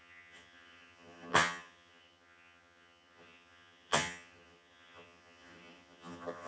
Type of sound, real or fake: fake